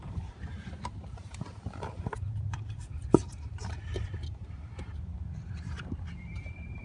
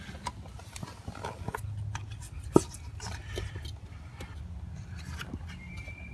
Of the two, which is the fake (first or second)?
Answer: first